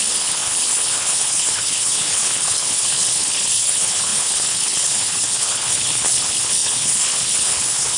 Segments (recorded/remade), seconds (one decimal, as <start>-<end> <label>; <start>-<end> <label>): 0.0-8.0 remade